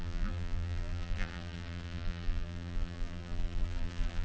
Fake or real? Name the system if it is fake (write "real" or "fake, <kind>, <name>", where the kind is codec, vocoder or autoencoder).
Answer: fake, vocoder, BigVGAN v2